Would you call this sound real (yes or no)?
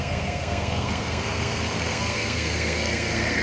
no